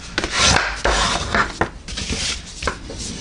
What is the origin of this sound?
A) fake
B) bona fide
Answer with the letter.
B